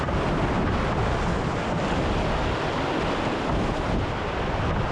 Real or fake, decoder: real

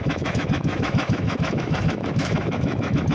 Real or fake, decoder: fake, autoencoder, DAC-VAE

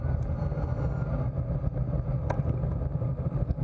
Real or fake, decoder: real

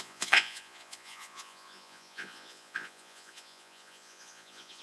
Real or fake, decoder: fake, vocoder, Vocos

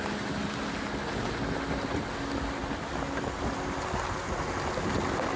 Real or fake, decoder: real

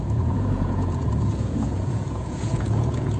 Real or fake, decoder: fake, vocoder, Vocos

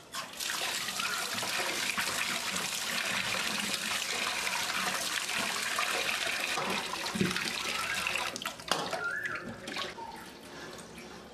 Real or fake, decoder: real